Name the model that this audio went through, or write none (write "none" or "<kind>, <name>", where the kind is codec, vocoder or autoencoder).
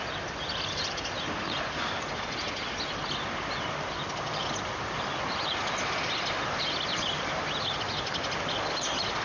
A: none